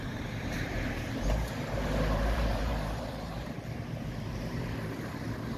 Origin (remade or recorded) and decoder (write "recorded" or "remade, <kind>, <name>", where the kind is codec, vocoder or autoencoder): remade, vocoder, BigVGAN v2